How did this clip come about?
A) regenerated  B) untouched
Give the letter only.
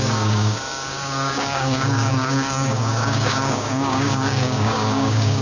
A